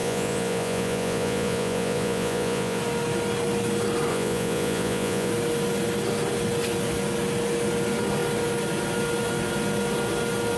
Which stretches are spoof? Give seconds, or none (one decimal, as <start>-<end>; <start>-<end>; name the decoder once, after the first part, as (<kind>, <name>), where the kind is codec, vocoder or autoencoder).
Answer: 0.0-2.8 (vocoder, Vocos); 4.1-5.3